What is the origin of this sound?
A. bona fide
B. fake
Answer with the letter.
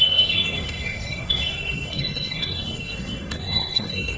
B